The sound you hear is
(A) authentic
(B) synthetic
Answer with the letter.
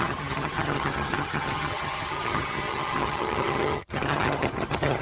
B